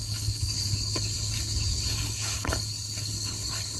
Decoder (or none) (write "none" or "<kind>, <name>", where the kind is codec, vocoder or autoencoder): codec, HILCodec